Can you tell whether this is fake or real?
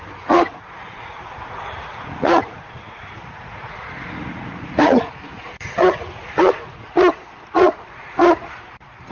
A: fake